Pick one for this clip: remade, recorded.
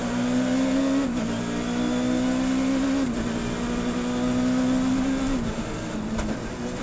recorded